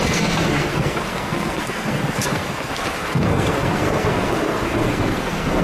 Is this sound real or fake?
fake